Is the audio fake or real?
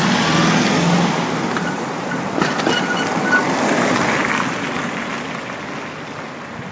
real